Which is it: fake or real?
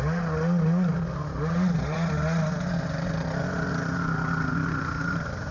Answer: real